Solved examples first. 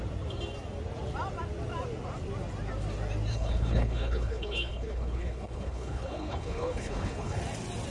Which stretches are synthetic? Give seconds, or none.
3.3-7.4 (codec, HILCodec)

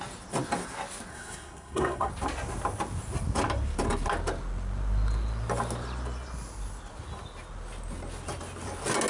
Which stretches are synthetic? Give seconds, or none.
1.1-2.1 (codec, SNAC)

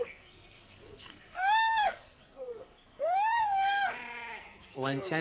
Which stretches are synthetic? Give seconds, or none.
0.0-3.9 (codec, SNAC); 4.4-5.2

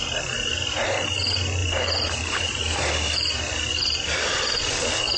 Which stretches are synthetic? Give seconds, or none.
1.6-2.6 (vocoder, BigVGAN v2)

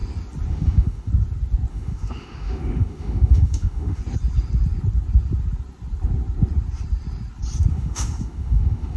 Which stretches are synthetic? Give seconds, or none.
0.5-1.1 (autoencoder, DAC-VAE); 1.7-4.0; 7.7-9.0

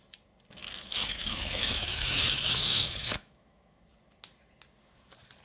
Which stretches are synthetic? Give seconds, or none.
0.6-3.8 (autoencoder, DAC-VAE)

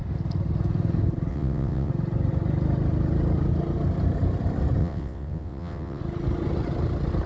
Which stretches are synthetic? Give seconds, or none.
1.3-1.9 (vocoder, WaveNeXt); 4.8-6.0